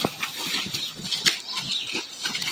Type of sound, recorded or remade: recorded